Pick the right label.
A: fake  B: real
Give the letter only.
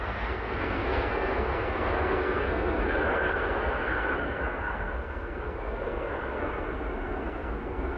A